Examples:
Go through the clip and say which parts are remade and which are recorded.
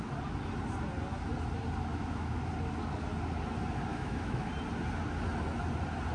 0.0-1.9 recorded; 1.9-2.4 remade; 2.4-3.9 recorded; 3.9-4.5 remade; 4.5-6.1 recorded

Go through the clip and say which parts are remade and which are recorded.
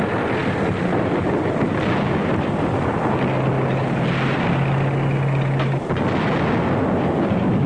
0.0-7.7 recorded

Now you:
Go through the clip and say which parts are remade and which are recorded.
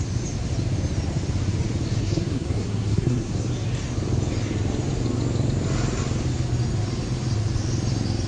0.0-2.0 recorded; 2.0-3.3 remade; 3.3-8.3 recorded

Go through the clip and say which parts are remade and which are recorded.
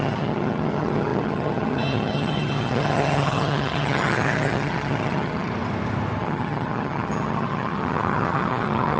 0.0-5.5 remade; 5.5-6.2 recorded; 6.2-9.0 remade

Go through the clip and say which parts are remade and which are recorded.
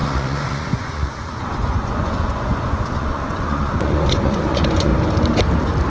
0.0-4.9 remade; 4.9-5.9 recorded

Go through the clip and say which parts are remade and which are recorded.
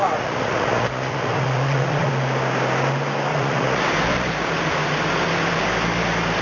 0.0-2.1 remade; 2.1-3.3 recorded; 3.3-3.8 remade; 3.8-6.4 recorded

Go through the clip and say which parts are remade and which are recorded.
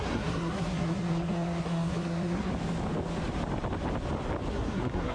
0.0-2.5 remade; 2.5-4.5 recorded; 4.5-5.1 remade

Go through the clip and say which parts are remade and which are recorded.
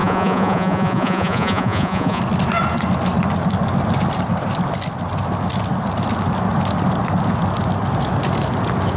0.0-2.2 remade; 2.2-9.0 recorded